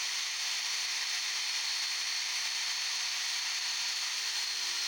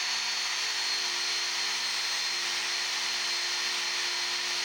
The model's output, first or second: first